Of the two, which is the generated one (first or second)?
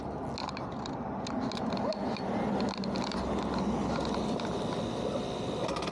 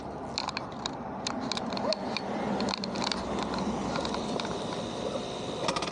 second